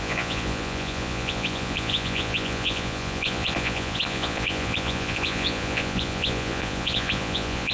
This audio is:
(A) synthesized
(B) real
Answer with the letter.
A